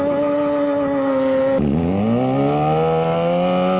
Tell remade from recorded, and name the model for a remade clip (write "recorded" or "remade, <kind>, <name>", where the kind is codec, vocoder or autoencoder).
recorded